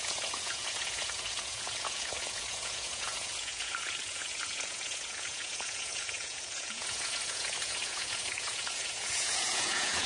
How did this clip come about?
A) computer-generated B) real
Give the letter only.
A